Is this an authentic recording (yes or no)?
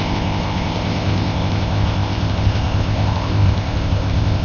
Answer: no